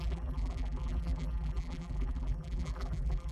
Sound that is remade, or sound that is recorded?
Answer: remade